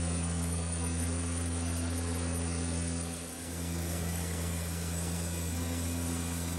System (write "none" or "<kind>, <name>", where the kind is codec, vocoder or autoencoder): codec, SNAC